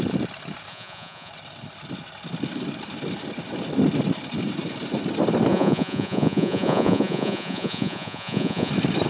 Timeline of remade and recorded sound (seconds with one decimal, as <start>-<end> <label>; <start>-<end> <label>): 0.0-0.7 recorded; 0.7-1.3 remade; 1.3-5.5 recorded; 5.5-8.7 remade; 8.7-9.1 recorded